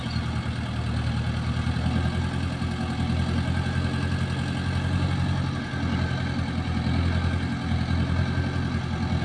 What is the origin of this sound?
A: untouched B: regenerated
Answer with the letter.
A